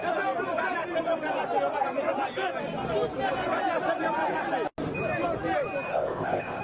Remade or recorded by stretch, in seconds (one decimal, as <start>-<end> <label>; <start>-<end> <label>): 0.0-5.9 recorded; 5.9-6.6 remade